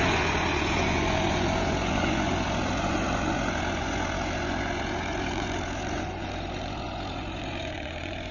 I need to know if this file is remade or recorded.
remade